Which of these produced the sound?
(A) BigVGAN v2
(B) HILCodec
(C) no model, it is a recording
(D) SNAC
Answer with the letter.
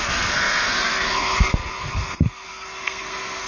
D